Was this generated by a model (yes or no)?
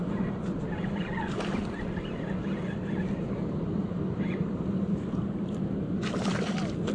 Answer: no